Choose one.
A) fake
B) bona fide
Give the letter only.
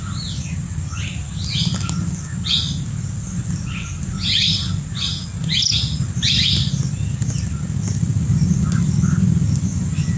B